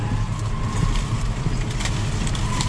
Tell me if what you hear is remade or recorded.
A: recorded